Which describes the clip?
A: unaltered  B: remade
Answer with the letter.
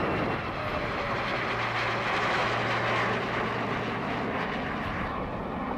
A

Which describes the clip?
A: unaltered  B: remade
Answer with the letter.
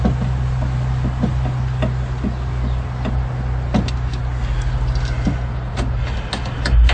A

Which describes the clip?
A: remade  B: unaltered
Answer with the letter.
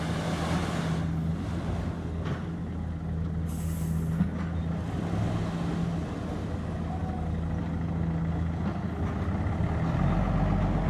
B